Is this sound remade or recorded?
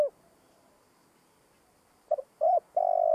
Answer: recorded